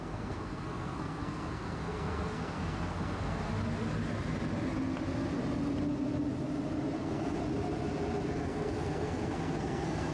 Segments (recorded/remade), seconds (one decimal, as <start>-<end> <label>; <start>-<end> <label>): 0.0-3.4 remade; 3.4-7.0 recorded; 7.0-7.4 remade; 7.4-8.3 recorded; 8.3-10.1 remade